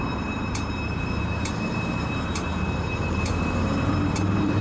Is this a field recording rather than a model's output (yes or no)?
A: no